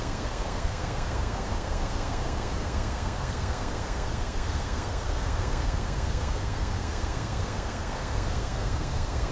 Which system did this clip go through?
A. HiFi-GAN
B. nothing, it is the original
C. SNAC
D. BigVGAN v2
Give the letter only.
C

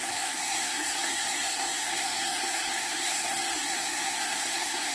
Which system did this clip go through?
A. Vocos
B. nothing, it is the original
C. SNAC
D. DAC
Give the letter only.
C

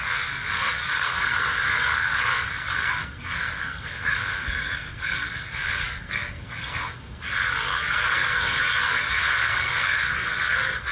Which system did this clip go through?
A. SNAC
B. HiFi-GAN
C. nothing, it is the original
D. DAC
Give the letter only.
A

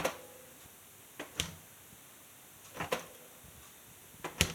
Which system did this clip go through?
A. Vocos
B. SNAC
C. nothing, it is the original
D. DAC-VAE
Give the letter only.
C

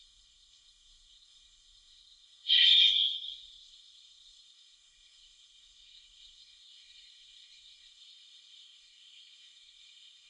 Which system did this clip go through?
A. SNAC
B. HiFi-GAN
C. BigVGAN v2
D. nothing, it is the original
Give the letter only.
A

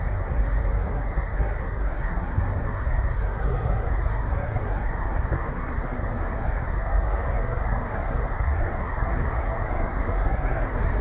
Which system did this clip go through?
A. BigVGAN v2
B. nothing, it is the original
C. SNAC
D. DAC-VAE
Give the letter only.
C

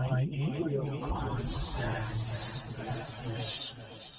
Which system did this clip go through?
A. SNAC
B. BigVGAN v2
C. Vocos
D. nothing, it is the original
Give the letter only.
D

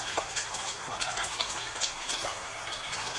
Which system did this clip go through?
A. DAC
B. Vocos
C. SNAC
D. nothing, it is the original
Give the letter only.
C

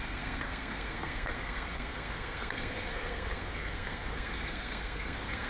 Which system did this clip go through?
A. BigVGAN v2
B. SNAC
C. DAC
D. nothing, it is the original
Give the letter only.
B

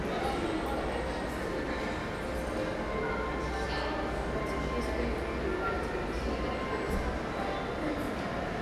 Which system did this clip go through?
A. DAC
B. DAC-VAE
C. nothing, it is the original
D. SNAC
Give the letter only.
C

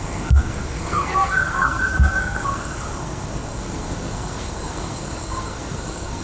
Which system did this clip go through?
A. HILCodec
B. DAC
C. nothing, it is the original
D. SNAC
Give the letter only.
D